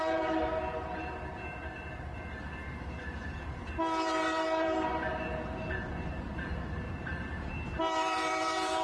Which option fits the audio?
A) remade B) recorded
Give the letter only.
A